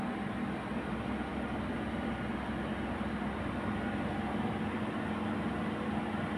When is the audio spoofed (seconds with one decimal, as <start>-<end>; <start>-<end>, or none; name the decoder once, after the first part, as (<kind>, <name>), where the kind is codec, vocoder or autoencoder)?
none